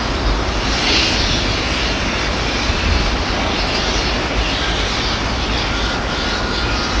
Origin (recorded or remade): recorded